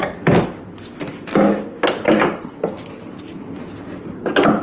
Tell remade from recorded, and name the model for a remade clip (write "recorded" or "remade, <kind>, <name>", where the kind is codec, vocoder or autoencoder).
recorded